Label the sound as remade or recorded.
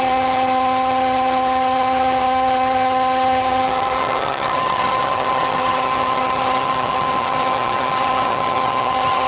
remade